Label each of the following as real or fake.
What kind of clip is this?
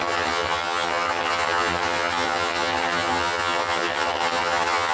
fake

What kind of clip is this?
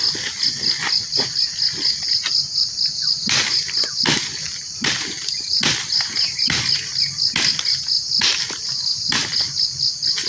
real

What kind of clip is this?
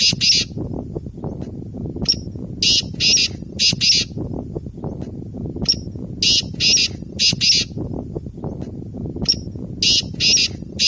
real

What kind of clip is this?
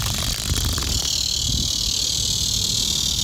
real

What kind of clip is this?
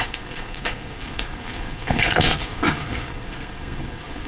fake